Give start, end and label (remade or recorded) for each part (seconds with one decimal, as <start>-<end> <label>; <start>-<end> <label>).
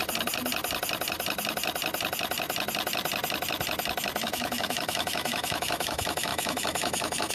0.0-4.2 recorded; 4.2-7.3 remade